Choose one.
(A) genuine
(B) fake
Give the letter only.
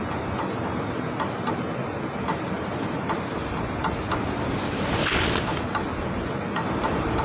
A